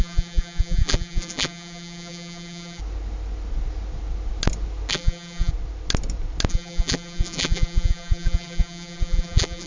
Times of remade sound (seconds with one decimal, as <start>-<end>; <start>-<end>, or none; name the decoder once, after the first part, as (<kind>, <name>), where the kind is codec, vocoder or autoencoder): 0.0-2.8 (vocoder, BigVGAN v2); 4.9-5.5; 6.5-9.7